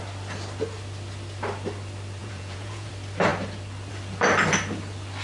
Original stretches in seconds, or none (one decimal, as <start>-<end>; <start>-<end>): 0.0-2.2; 2.9-5.2

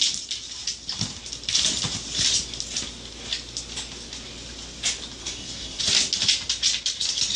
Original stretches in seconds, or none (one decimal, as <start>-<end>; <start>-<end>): 0.0-5.2; 5.8-7.4